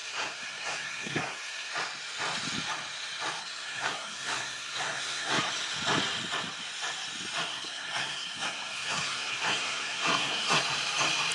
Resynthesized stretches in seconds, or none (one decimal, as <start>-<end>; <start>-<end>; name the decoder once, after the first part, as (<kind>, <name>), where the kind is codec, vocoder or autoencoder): 0.0-1.7 (codec, SNAC); 3.4-5.5; 7.5-10.6